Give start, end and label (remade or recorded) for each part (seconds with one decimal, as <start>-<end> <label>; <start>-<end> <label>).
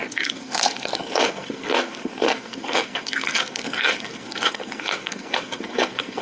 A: 0.0-6.2 remade